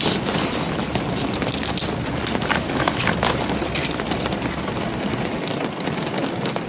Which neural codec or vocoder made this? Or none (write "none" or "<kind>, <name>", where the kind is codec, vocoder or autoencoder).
none